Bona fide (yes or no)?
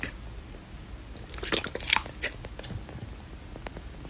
yes